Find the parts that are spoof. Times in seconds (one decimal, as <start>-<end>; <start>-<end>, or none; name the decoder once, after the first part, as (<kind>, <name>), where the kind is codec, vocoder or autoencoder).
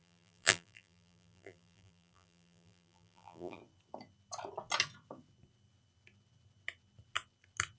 0.0-3.6 (vocoder, BigVGAN v2)